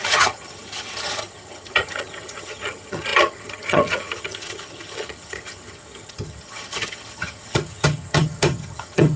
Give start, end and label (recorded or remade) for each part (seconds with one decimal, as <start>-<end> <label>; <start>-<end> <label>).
0.0-9.2 remade